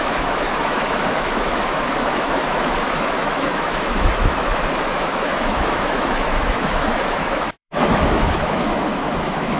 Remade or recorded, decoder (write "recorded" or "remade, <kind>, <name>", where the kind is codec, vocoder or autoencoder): remade, autoencoder, DAC-VAE